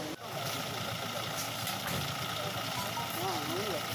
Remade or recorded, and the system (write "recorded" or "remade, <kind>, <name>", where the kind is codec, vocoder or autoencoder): recorded